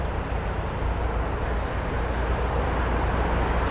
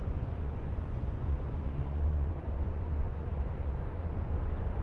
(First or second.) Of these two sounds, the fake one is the second